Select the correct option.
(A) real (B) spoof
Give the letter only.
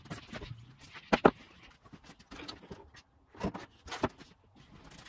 A